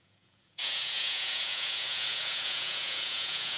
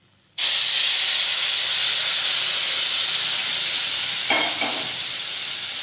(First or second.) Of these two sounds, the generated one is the first